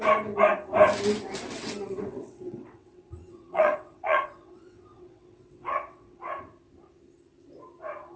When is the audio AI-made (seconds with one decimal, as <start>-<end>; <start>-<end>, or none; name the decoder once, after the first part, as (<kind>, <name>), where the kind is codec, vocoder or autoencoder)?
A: 1.5-6.2 (vocoder, WaveNeXt)